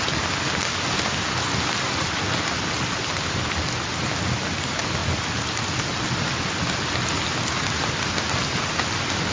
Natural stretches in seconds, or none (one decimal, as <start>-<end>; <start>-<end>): 0.0-9.3